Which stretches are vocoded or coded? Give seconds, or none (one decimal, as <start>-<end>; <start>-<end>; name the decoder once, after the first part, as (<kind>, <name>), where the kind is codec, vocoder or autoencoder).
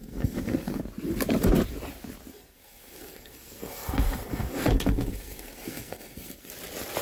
0.0-0.8 (codec, SNAC); 2.3-6.5